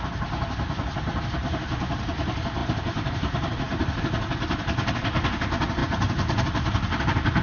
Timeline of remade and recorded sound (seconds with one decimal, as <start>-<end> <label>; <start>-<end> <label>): 0.0-2.6 recorded; 2.6-4.0 remade; 4.0-5.8 recorded; 5.8-7.0 remade; 7.0-7.4 recorded